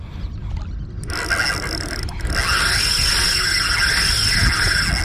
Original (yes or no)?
yes